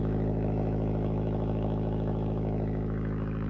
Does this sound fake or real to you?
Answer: fake